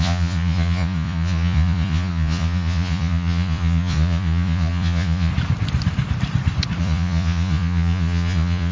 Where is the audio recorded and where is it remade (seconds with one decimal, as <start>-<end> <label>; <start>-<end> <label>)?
0.0-5.3 remade; 5.3-6.8 recorded; 6.8-8.7 remade